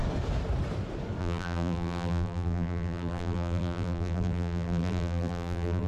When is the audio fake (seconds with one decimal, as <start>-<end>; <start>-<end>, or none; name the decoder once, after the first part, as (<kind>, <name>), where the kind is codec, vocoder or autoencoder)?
1.2-5.9 (vocoder, BigVGAN v2)